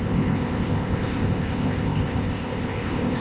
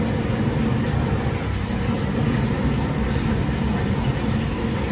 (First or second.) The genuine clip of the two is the second